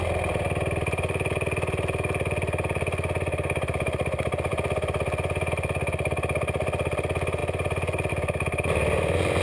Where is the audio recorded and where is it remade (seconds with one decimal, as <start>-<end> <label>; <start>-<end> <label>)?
0.0-9.4 recorded

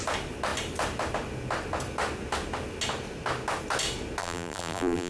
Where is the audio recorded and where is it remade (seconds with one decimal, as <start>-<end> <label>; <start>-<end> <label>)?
0.0-4.2 recorded; 4.2-5.1 remade

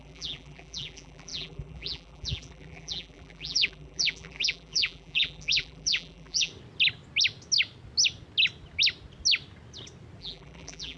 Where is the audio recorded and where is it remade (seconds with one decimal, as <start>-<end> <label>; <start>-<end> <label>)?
0.0-6.5 remade; 6.5-10.2 recorded; 10.2-11.0 remade

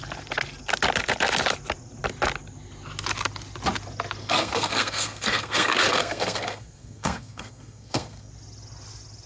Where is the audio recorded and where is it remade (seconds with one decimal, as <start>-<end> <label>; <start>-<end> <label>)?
0.0-4.2 recorded; 4.2-8.3 remade; 8.3-9.3 recorded

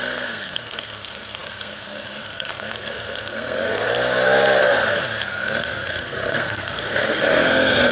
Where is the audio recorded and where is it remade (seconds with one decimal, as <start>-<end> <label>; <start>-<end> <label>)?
0.0-3.9 remade; 3.9-4.6 recorded; 4.6-7.9 remade

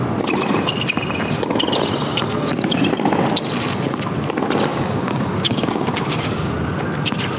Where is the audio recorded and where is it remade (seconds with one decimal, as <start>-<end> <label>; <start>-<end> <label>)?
0.0-4.7 recorded; 4.7-6.5 remade; 6.5-7.4 recorded

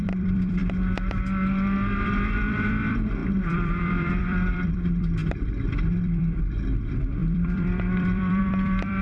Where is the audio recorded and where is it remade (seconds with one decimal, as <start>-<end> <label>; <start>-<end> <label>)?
0.0-0.6 remade; 0.6-2.0 recorded; 2.0-9.0 remade

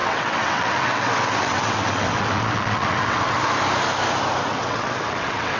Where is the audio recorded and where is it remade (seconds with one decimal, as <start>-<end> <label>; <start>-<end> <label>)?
0.0-3.4 remade; 3.4-4.5 recorded; 4.5-5.6 remade